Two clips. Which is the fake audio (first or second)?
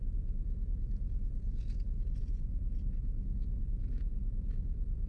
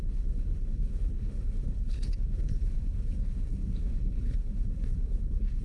second